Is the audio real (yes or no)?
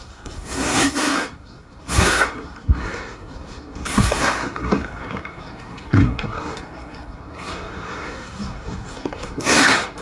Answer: no